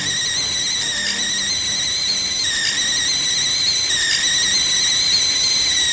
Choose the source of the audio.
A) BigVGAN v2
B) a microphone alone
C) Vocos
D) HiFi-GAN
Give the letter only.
B